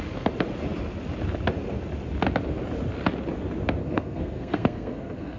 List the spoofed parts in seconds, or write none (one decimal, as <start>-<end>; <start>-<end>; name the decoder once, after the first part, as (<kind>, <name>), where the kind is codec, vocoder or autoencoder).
3.8-5.4 (codec, SNAC)